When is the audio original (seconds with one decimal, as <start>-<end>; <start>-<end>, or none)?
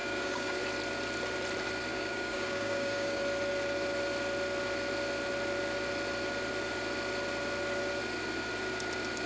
0.6-1.9; 3.2-9.3